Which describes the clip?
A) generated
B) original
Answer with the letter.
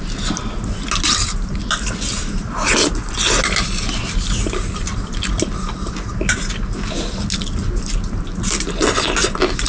B